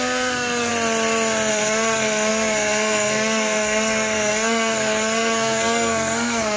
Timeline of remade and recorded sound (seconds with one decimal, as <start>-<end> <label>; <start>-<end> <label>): 0.0-0.7 remade; 0.7-1.5 recorded; 1.5-6.6 remade